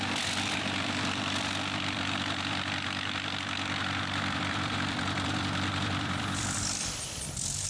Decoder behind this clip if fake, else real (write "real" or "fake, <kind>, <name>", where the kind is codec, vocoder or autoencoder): fake, vocoder, BigVGAN v2